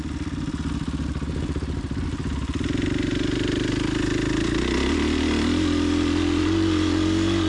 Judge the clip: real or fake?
real